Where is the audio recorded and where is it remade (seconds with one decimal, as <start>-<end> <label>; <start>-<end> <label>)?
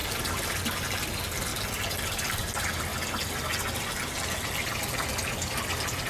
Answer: 0.0-6.1 recorded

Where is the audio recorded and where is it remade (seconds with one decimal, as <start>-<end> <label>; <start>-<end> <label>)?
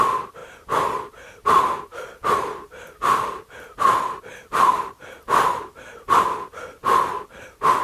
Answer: 0.0-7.8 recorded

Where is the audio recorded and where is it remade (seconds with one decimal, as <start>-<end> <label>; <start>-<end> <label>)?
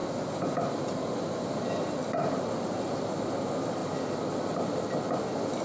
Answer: 0.0-5.6 recorded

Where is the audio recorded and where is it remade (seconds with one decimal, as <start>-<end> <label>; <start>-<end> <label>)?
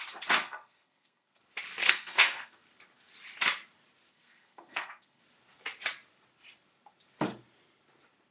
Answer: 0.0-0.4 recorded; 0.4-1.4 remade; 1.4-1.8 recorded; 1.8-2.6 remade; 2.6-4.1 recorded; 4.1-5.2 remade; 5.2-8.3 recorded